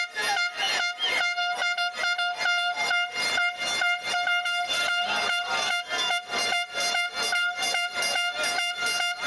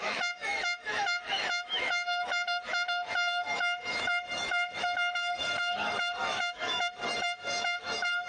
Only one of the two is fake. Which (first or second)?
second